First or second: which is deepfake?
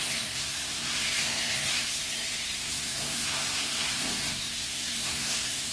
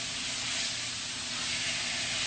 first